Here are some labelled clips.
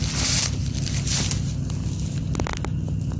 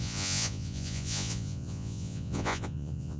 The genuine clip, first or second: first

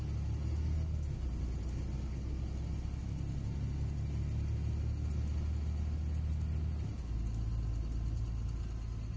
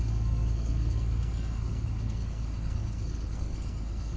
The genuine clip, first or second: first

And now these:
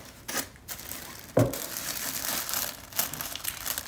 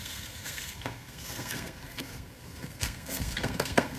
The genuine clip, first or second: first